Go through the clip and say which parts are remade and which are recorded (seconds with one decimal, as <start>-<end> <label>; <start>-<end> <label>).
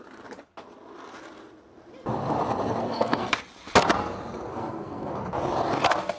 0.0-2.8 recorded; 2.8-3.3 remade; 3.3-4.5 recorded; 4.5-5.2 remade; 5.2-6.2 recorded